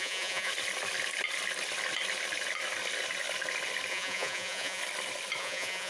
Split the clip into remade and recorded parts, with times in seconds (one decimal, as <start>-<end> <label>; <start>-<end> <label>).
0.0-0.5 remade; 0.5-3.9 recorded; 3.9-4.8 remade; 4.8-5.4 recorded; 5.4-5.9 remade